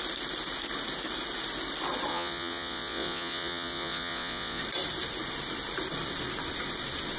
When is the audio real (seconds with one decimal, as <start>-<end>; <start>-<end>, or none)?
0.0-2.1; 4.6-7.2